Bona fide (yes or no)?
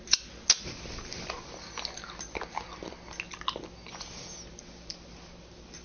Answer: yes